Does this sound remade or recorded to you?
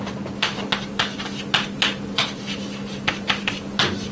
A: recorded